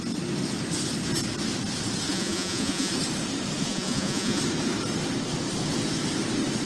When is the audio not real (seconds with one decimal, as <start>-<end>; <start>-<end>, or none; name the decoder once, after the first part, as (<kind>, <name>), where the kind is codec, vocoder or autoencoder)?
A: 2.1-2.9 (vocoder, Vocos); 3.6-4.4